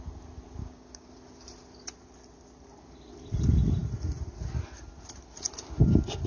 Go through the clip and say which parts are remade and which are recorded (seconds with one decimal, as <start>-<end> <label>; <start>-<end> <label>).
0.0-0.6 recorded; 0.6-1.1 remade; 1.1-6.3 recorded